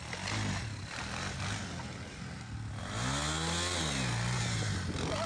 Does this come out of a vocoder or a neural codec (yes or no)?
no